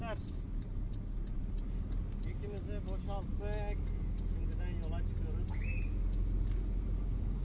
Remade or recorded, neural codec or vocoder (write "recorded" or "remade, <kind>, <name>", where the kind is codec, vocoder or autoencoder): recorded